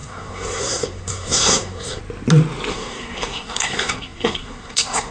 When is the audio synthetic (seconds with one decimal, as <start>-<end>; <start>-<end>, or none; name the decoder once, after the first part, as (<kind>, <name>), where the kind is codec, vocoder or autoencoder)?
0.0-2.0 (codec, SNAC); 2.7-5.1